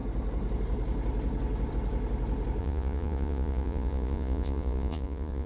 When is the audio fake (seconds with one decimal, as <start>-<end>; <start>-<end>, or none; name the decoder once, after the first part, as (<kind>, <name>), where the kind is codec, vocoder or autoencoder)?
2.6-5.5 (vocoder, Vocos)